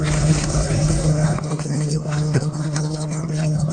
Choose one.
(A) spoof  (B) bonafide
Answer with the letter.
A